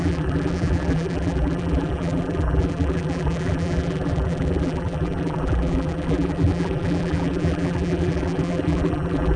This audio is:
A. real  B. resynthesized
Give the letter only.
B